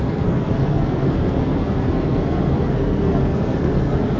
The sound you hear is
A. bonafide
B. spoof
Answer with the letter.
B